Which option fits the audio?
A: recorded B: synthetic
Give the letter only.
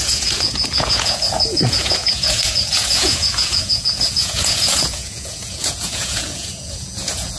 B